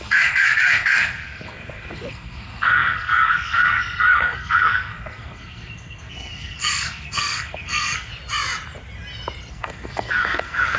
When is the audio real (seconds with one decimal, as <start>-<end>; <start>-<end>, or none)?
8.1-9.5